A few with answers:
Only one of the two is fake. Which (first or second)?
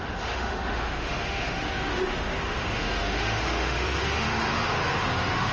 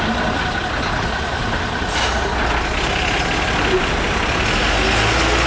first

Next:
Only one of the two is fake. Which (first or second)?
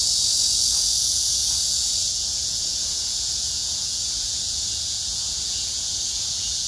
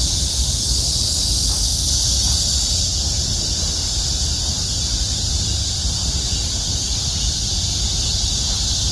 first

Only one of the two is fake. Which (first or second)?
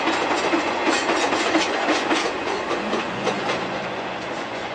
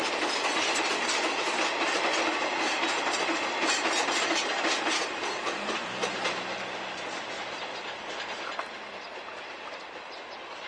first